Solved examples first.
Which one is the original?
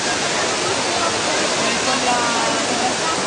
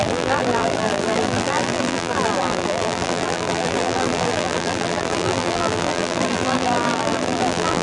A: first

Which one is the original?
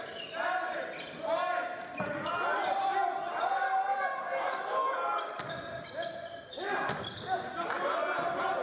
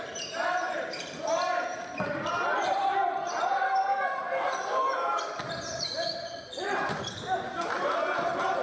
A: first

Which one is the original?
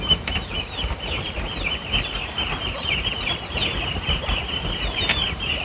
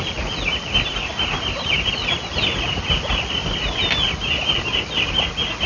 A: second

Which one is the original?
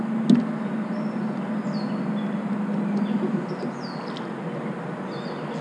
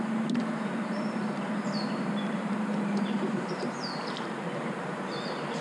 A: first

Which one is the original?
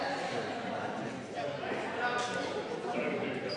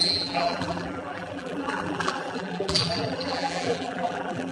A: first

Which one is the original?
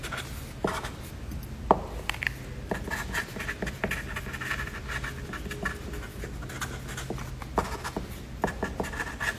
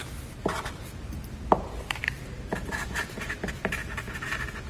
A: first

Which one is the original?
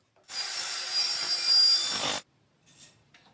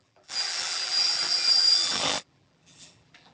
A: first